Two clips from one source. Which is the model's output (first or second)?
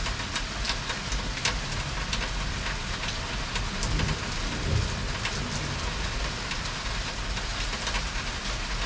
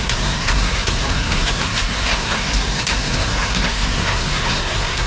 second